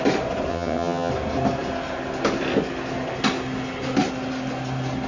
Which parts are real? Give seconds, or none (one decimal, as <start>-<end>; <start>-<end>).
0.0-0.5; 1.1-5.1